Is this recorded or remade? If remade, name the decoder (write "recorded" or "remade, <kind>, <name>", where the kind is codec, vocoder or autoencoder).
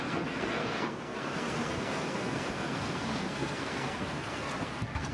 remade, codec, SNAC